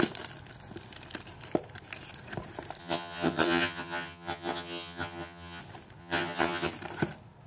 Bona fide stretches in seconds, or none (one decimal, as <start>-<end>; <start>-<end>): 0.0-2.8; 5.6-6.0; 6.7-7.5